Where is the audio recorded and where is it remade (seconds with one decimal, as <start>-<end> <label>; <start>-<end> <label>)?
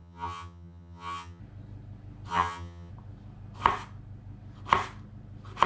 0.0-1.4 remade; 1.4-2.3 recorded; 2.3-2.9 remade; 2.9-5.7 recorded